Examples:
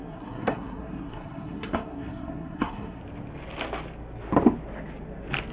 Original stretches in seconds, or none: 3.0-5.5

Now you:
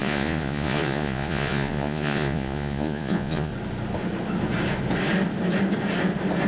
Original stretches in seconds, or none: 3.5-6.5

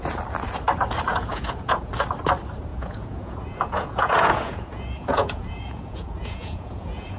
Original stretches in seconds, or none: 0.0-1.1; 1.9-2.7